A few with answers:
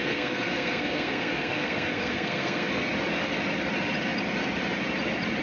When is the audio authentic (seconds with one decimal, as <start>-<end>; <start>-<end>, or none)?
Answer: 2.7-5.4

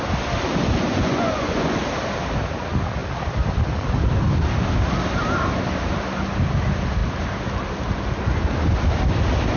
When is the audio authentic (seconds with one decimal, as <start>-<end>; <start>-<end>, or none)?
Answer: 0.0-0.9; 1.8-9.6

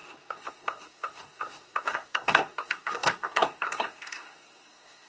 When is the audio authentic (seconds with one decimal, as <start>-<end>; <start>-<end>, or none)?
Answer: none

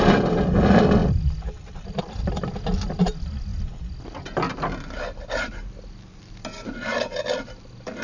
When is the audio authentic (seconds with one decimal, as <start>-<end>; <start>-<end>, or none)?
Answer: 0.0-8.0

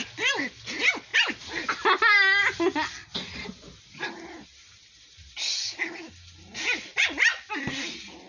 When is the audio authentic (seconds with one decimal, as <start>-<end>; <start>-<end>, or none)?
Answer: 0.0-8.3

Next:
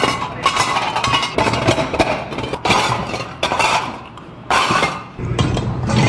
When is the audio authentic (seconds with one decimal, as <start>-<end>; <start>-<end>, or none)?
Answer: 0.0-3.0

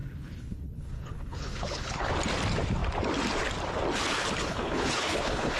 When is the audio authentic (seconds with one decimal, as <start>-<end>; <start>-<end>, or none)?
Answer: 2.1-4.4

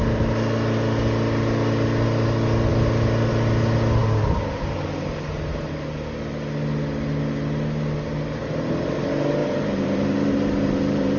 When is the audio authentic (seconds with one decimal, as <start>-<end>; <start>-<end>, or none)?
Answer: 0.0-9.4